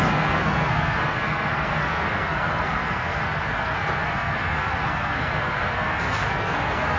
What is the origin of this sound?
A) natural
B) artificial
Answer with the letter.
B